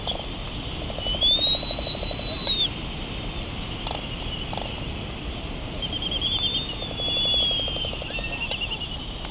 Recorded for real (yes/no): yes